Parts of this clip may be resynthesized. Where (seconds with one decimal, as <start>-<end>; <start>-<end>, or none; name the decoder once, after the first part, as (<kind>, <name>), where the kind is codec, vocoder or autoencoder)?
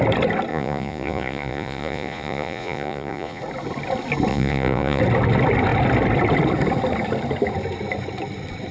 0.5-3.4 (vocoder, Vocos); 4.3-5.0